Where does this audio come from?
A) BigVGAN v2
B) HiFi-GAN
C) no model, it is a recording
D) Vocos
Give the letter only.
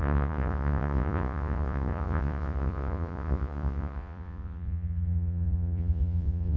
D